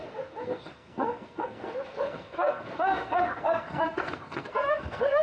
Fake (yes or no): yes